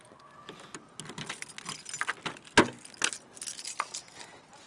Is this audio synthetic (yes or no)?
no